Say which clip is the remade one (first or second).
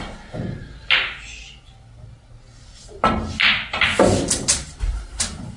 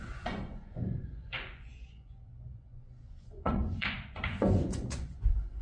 second